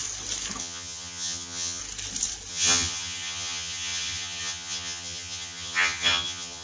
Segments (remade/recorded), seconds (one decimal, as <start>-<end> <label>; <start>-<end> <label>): 0.0-0.6 recorded; 0.6-1.8 remade; 1.8-2.5 recorded; 2.5-6.6 remade